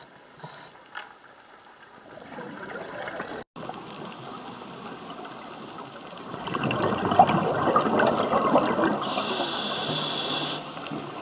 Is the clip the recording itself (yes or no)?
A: yes